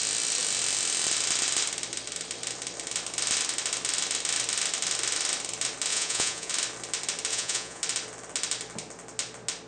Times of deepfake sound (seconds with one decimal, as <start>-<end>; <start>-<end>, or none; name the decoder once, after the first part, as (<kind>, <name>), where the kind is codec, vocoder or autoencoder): 5.9-6.5 (vocoder, Vocos); 7.3-7.8